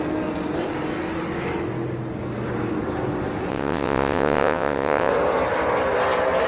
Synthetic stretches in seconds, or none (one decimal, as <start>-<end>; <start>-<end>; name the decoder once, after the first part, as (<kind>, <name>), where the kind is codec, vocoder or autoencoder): 3.5-5.1 (vocoder, WaveNeXt)